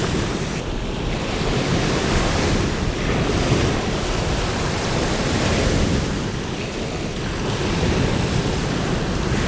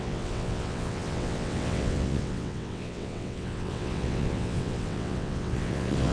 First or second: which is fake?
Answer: second